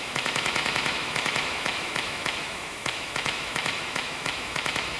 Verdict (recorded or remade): remade